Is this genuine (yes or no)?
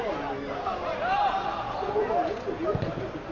yes